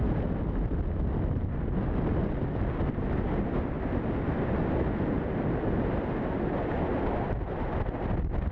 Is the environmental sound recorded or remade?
recorded